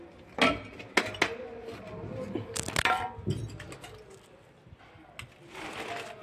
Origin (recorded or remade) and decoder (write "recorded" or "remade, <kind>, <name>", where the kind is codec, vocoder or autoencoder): recorded